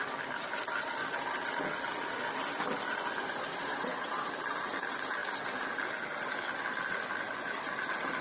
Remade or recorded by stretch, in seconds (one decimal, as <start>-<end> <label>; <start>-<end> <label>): 0.0-3.5 recorded; 3.5-4.3 remade; 4.3-8.2 recorded